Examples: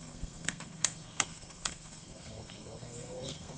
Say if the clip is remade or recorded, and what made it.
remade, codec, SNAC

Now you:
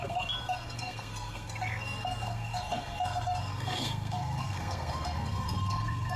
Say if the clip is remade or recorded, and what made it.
remade, codec, SNAC